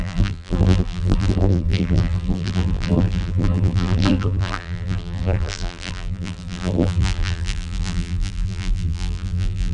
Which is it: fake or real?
fake